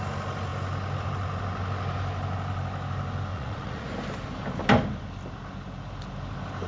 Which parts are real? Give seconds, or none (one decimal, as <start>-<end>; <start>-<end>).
0.0-3.3; 3.9-6.7